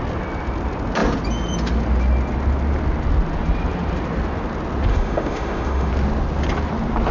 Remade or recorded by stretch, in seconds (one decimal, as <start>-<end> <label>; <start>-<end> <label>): 0.0-4.9 recorded; 4.9-5.9 remade; 5.9-7.1 recorded